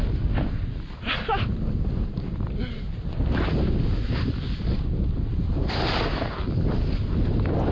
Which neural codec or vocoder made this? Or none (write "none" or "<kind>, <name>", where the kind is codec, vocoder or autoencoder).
none